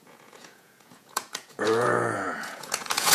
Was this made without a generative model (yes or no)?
no